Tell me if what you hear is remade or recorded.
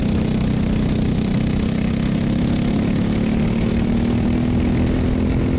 recorded